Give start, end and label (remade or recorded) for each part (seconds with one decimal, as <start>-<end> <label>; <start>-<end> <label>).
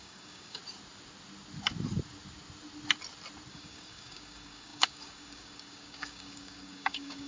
0.0-0.6 remade; 0.6-3.5 recorded; 3.5-7.3 remade